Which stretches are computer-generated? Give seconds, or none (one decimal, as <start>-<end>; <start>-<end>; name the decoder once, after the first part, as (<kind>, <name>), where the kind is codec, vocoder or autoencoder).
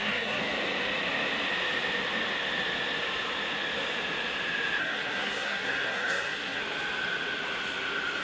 0.0-0.4 (codec, SNAC); 4.8-6.6